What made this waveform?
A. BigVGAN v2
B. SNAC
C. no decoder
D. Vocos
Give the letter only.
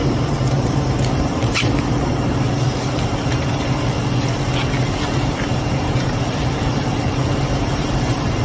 A